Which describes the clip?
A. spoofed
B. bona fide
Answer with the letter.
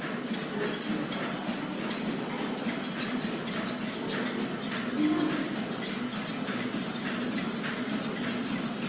B